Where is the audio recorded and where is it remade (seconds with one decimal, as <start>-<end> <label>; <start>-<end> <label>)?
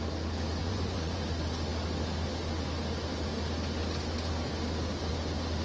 0.0-0.6 recorded; 0.6-1.2 remade; 1.2-5.6 recorded